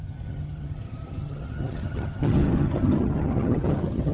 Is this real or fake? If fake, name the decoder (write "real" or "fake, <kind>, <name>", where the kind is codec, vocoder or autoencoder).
fake, vocoder, HiFi-GAN